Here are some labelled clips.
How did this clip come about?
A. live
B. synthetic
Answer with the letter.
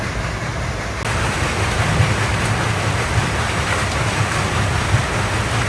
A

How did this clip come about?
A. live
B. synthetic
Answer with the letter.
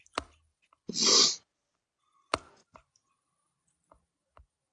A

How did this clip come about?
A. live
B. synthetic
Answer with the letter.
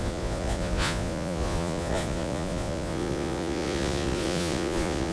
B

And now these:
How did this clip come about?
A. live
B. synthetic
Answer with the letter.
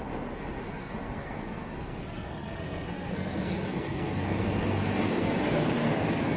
B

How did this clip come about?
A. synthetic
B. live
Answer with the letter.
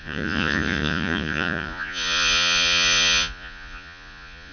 A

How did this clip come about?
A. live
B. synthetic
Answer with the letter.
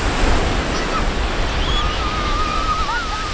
A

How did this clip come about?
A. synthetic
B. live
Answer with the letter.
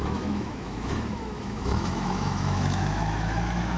A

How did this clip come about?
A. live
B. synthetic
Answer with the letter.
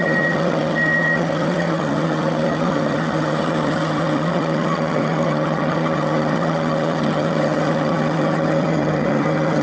B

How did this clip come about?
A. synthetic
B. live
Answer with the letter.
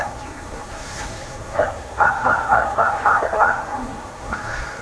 A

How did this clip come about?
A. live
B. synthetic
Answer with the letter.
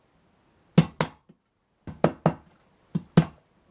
A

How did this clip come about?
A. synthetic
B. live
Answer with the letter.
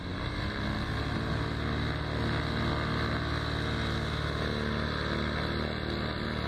B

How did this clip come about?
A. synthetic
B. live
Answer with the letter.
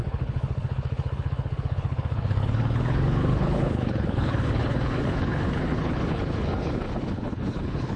A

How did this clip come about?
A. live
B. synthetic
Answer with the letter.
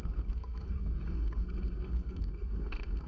B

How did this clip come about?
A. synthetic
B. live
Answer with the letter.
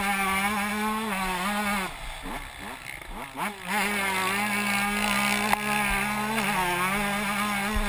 B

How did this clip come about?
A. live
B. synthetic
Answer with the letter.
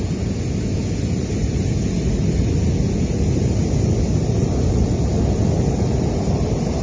A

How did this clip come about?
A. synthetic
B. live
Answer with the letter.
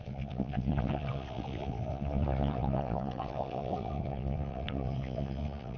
A